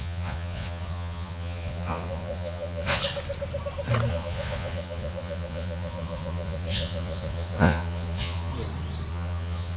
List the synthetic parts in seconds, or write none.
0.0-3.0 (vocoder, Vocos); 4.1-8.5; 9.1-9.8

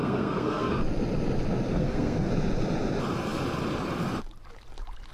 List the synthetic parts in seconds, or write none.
0.0-0.8 (codec, SNAC); 1.7-2.3

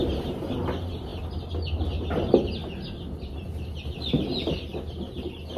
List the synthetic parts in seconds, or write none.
none

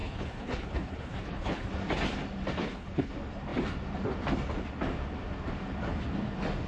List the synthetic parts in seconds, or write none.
0.0-1.7 (codec, HILCodec); 2.6-3.1

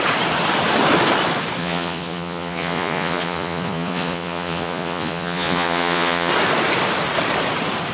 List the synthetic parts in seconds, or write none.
1.6-6.3 (vocoder, Vocos)